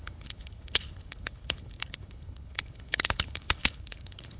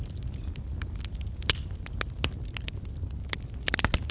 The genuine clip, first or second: second